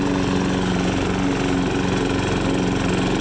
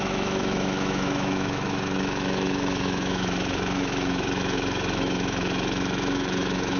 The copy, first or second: second